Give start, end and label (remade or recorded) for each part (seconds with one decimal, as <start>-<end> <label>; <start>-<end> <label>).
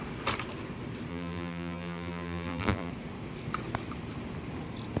0.0-1.1 recorded; 1.1-2.9 remade; 2.9-5.0 recorded